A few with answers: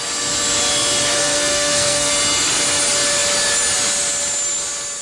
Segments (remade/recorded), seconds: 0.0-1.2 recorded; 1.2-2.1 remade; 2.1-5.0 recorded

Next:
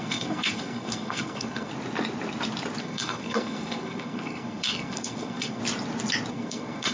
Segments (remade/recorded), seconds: 0.0-1.7 remade; 1.7-2.8 recorded; 2.8-5.6 remade; 5.6-6.3 recorded; 6.3-6.9 remade